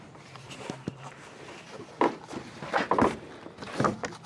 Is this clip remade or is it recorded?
recorded